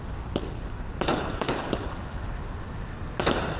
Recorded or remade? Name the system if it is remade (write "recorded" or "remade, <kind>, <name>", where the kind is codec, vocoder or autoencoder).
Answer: recorded